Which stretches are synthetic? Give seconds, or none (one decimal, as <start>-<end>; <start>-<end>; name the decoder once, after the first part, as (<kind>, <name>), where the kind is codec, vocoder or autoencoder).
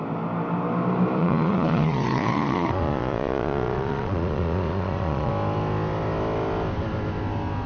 1.2-5.3 (vocoder, Vocos)